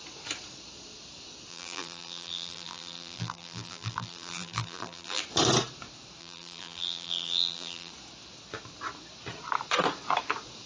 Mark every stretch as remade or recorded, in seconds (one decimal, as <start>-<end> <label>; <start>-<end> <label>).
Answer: 0.0-1.5 recorded; 1.5-5.2 remade; 5.2-6.2 recorded; 6.2-7.9 remade; 7.9-10.7 recorded